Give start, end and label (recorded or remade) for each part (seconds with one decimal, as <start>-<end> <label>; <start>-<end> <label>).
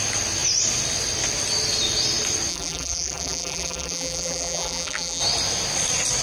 0.0-2.5 recorded; 2.5-5.2 remade; 5.2-6.2 recorded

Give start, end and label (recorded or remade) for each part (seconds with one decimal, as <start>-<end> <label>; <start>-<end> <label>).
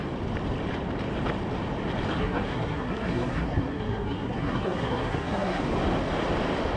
0.0-2.2 recorded; 2.2-5.6 remade; 5.6-6.8 recorded